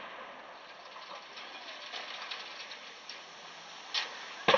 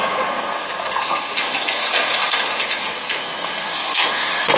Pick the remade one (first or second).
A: second